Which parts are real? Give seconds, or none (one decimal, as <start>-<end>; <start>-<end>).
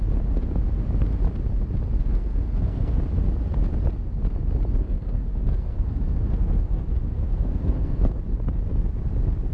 0.0-2.0; 3.0-4.8; 8.2-9.5